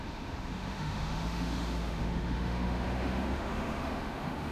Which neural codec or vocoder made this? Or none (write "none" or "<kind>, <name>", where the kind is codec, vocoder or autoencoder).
autoencoder, DAC-VAE